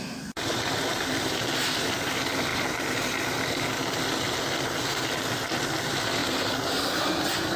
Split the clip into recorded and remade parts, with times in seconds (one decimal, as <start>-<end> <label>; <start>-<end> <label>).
0.0-2.5 remade; 2.5-5.1 recorded; 5.1-6.2 remade; 6.2-6.9 recorded; 6.9-7.6 remade